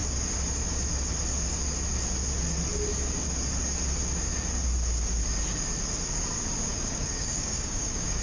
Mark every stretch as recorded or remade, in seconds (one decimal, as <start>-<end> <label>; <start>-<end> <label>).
0.0-6.7 recorded; 6.7-8.2 remade